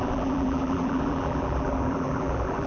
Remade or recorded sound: remade